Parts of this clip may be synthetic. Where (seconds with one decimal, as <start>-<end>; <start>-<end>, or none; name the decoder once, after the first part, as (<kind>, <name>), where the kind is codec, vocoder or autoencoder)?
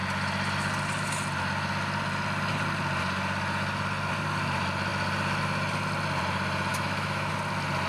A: 6.7-7.3 (autoencoder, DAC-VAE)